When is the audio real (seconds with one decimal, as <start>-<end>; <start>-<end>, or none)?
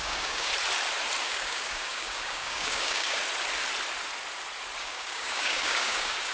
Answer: 0.5-1.2; 3.2-4.8